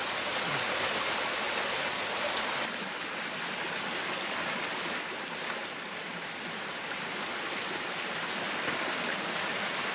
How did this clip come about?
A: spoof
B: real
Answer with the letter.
B